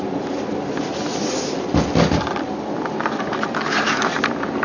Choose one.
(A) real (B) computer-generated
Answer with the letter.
B